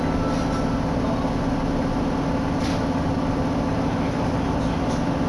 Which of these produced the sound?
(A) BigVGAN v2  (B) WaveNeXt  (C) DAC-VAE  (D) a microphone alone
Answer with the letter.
D